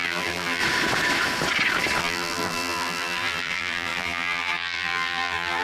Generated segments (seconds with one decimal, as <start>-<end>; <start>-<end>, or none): 0.0-0.6; 2.0-5.6